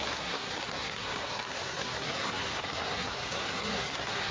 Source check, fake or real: fake